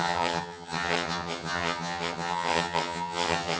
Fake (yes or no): yes